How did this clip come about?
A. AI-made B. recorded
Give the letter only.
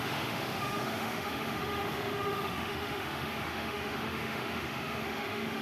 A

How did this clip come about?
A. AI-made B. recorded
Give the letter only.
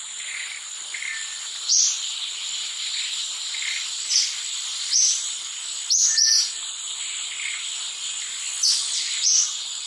B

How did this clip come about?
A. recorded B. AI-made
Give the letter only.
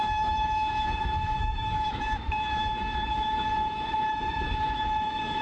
B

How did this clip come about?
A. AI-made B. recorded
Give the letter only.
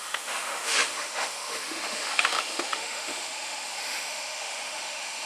A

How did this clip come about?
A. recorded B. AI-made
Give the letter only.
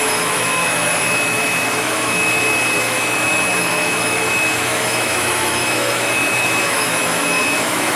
B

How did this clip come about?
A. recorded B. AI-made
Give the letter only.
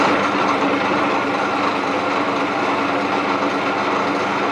A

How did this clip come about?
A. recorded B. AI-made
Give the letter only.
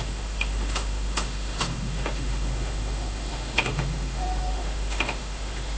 B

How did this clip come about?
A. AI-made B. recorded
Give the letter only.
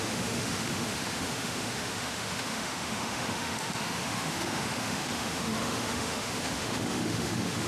A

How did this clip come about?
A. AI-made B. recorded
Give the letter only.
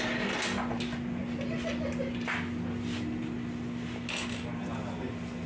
B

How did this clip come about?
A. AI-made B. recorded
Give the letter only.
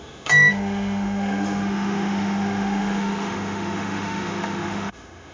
A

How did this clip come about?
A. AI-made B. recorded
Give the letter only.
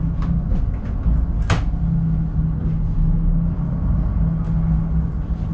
B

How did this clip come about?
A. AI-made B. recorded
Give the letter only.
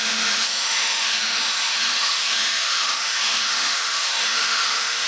A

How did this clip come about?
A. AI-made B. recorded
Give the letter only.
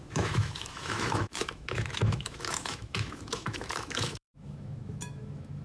A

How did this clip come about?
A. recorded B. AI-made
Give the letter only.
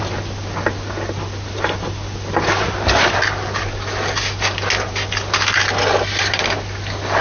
A